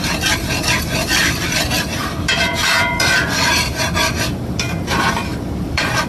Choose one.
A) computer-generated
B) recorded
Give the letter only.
A